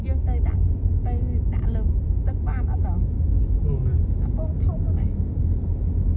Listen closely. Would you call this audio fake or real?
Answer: real